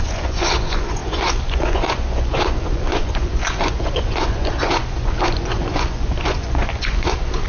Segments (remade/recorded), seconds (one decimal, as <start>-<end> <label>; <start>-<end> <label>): 0.0-7.5 remade